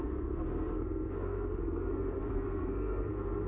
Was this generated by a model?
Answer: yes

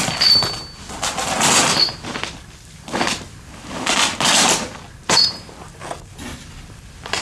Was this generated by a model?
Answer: no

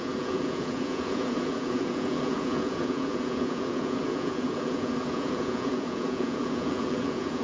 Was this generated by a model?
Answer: yes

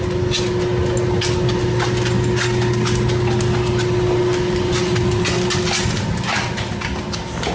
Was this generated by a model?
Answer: no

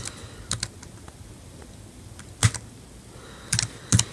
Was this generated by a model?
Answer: no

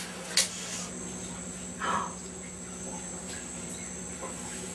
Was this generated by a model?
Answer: no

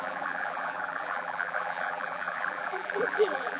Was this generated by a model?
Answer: yes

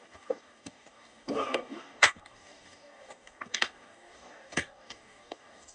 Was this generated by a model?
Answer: yes